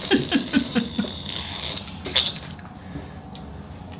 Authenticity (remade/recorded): recorded